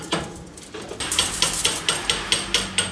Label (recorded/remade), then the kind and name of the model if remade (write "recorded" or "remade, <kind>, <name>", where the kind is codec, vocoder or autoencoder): recorded